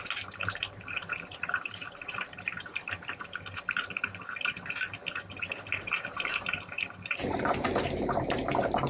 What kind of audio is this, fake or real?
fake